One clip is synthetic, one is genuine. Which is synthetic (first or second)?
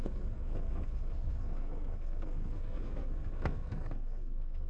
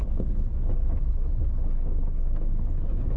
first